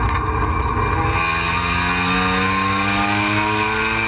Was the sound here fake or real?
real